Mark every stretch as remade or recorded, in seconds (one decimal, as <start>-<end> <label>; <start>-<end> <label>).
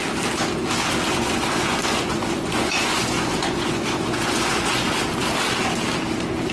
0.0-1.1 recorded; 1.1-5.0 remade; 5.0-6.5 recorded